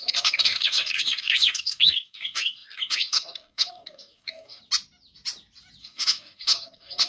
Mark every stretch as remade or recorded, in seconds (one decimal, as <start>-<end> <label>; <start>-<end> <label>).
0.0-4.6 remade; 4.6-5.8 recorded; 5.8-7.1 remade